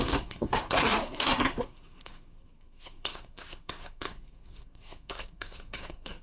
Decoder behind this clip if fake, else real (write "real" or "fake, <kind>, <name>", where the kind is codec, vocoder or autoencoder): fake, codec, SNAC